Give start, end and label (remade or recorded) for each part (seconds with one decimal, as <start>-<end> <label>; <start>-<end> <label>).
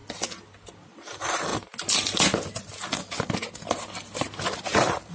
0.0-0.7 recorded; 0.7-1.5 remade; 1.5-4.6 recorded; 4.6-5.1 remade